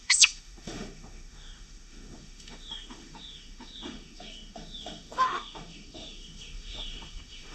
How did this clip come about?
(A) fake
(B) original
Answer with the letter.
A